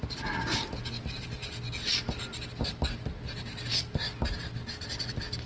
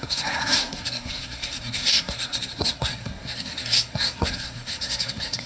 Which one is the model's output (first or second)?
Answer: second